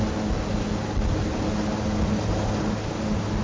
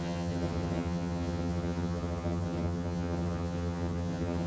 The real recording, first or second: first